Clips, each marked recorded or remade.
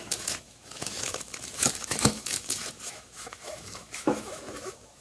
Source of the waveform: remade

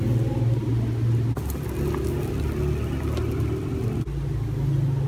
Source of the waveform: recorded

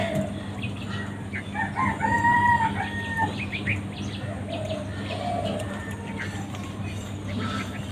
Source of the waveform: recorded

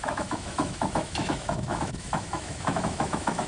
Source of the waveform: remade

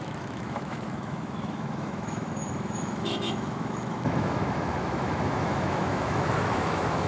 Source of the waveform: remade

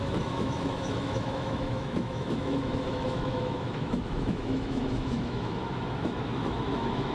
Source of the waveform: remade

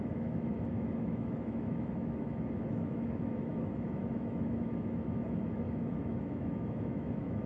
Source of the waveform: remade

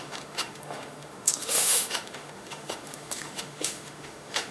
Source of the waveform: remade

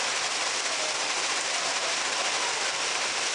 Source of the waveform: recorded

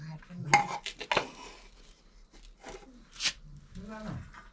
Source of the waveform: recorded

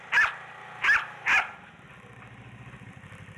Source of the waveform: recorded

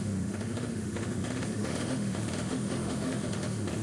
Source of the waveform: remade